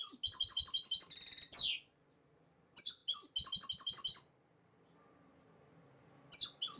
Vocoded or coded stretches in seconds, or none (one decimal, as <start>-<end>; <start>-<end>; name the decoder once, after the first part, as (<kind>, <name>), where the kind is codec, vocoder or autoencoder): 1.5-2.1 (vocoder, Vocos)